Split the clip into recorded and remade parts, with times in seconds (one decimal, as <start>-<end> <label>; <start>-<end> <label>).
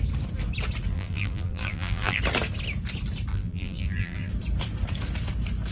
0.0-0.9 recorded; 0.9-2.2 remade; 2.2-3.3 recorded; 3.3-4.3 remade; 4.3-5.7 recorded